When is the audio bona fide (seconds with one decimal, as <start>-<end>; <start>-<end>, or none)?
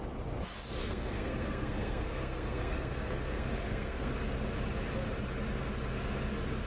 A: 0.0-0.8; 4.1-6.7